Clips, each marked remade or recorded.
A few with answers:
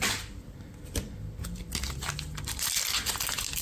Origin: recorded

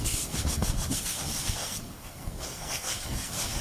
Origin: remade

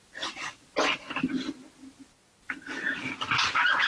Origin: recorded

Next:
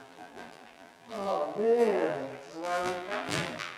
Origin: remade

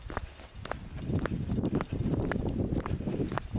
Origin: recorded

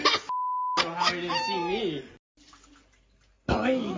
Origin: recorded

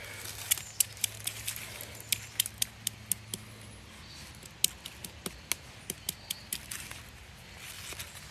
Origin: recorded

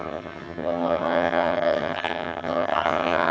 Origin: remade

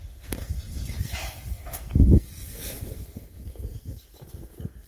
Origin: remade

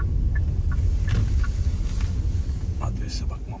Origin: recorded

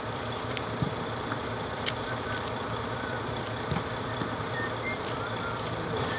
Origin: remade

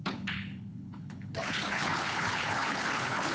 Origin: remade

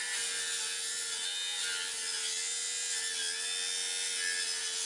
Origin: recorded